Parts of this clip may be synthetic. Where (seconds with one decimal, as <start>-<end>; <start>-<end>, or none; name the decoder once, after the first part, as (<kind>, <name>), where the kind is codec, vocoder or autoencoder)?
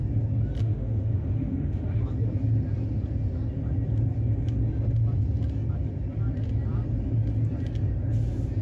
0.6-2.0 (autoencoder, DAC-VAE)